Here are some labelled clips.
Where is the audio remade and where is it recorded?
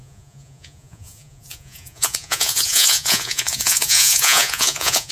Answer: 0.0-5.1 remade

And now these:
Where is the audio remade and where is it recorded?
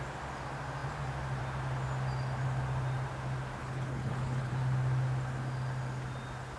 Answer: 0.0-3.6 recorded; 3.6-4.5 remade; 4.5-6.6 recorded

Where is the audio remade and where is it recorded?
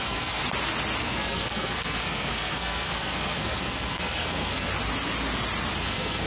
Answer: 0.0-0.4 remade; 0.4-1.0 recorded; 1.0-4.7 remade; 4.7-5.8 recorded; 5.8-6.3 remade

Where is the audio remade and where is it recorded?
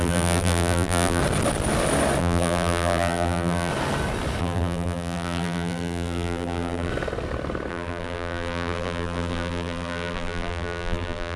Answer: 0.0-1.2 remade; 1.2-2.2 recorded; 2.2-3.7 remade; 3.7-4.4 recorded; 4.4-6.9 remade; 6.9-7.7 recorded; 7.7-11.4 remade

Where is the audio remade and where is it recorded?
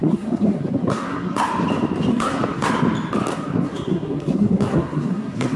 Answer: 0.0-1.5 remade; 1.5-2.1 recorded; 2.1-2.7 remade; 2.7-3.3 recorded; 3.3-5.6 remade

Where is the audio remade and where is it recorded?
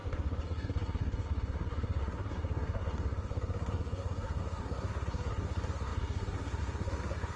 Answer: 0.0-7.4 remade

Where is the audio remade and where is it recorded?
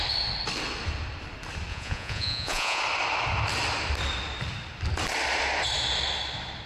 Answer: 0.0-1.7 recorded; 1.7-2.8 remade; 2.8-6.7 recorded